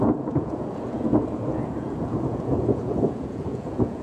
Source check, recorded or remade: remade